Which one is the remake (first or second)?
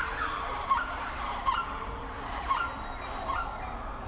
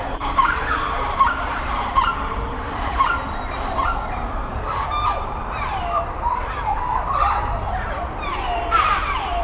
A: second